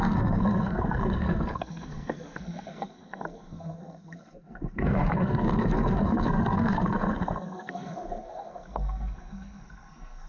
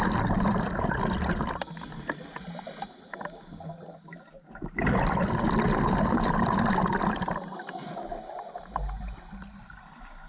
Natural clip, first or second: second